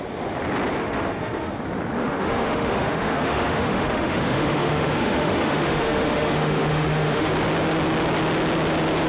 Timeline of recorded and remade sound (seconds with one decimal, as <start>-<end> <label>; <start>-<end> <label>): 0.0-0.8 recorded; 0.8-1.5 remade; 1.5-2.0 recorded; 2.0-7.3 remade; 7.3-9.1 recorded